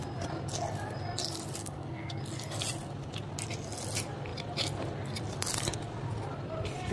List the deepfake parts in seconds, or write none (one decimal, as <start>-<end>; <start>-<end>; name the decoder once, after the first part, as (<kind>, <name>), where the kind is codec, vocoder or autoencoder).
1.6-2.2 (codec, SNAC)